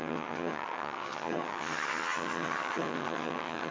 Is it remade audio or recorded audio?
remade